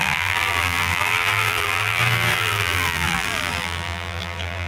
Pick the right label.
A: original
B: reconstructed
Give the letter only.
B